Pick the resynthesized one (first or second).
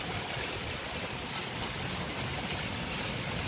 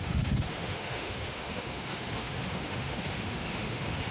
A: second